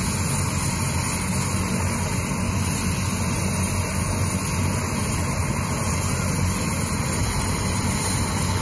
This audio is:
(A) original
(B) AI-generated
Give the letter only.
A